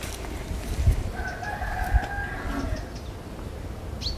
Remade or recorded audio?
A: recorded